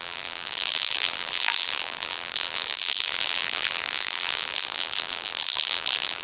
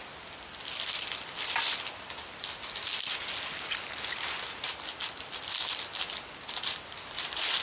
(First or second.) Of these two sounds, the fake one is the first